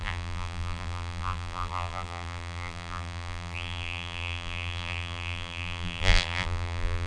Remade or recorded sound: remade